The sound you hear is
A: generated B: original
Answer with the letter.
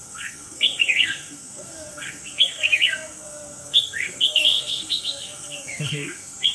A